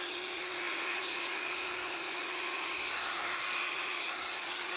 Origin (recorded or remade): recorded